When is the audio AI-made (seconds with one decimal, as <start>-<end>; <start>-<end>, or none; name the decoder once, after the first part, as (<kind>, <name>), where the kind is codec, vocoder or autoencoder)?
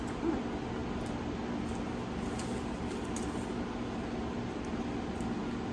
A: none